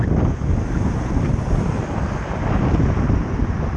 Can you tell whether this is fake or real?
real